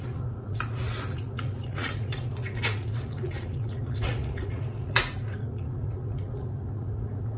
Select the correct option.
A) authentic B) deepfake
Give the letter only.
B